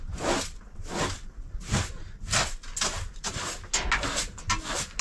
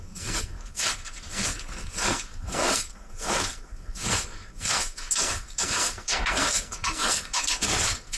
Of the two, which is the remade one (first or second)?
second